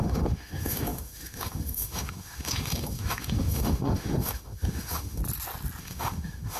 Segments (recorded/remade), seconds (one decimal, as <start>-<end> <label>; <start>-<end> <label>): 0.0-5.2 remade; 5.2-5.8 recorded; 5.8-6.6 remade